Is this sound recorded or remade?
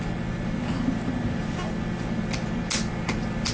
recorded